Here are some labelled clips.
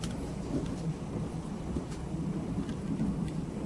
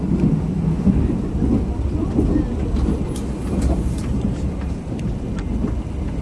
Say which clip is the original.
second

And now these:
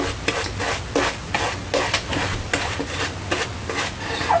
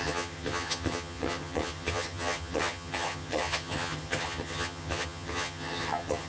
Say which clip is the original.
first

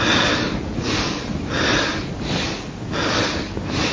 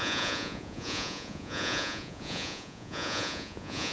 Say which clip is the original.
first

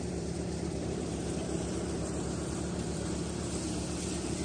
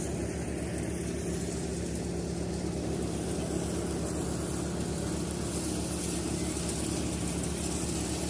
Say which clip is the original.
second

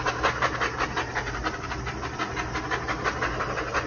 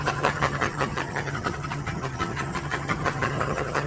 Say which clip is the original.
first